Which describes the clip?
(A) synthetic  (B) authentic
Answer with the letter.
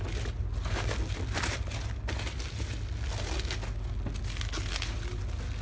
B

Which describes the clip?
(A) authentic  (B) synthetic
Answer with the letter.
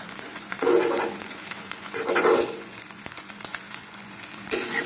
B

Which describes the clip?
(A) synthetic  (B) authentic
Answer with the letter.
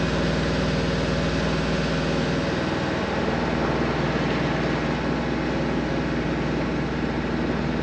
B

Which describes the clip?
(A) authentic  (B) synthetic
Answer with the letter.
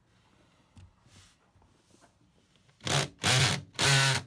A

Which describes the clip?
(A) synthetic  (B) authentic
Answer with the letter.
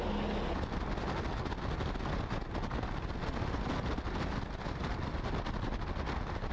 B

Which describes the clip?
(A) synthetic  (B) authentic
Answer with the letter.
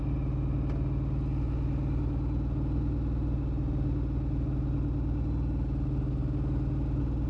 B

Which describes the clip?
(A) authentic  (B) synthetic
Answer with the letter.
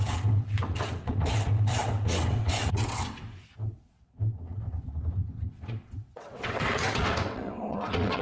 B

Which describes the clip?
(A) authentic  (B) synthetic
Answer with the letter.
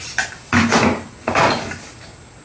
A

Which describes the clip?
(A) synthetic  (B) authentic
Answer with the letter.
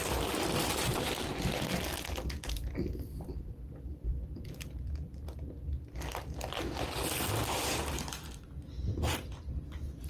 A